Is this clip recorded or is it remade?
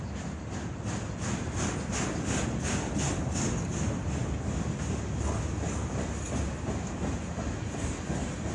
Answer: recorded